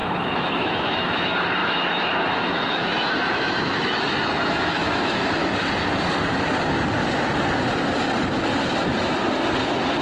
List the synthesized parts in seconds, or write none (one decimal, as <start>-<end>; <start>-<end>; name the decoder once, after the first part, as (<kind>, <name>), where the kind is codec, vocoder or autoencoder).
0.0-5.4 (autoencoder, DAC-VAE)